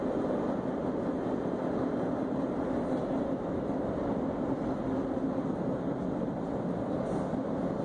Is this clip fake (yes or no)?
no